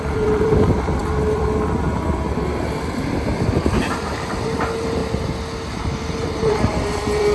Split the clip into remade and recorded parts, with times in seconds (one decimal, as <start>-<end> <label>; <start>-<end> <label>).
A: 0.0-5.0 remade; 5.0-5.7 recorded; 5.7-7.3 remade